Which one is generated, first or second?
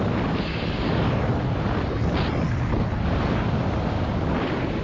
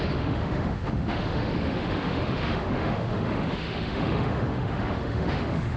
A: second